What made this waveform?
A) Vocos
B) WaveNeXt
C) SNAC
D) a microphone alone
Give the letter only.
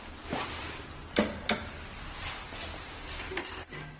D